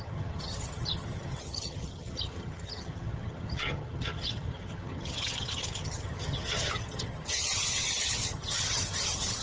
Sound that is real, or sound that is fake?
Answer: fake